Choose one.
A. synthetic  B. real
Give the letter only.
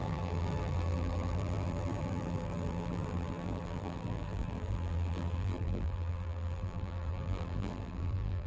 A